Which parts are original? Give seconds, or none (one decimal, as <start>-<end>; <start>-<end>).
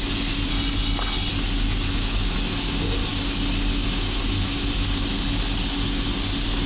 0.0-0.5; 1.3-6.7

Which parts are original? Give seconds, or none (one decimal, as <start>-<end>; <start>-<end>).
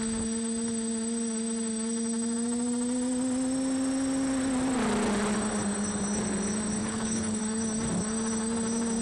0.0-6.8; 7.4-9.0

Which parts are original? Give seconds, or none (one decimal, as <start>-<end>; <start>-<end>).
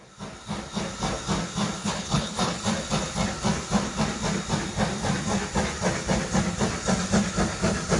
0.0-1.8; 2.6-8.0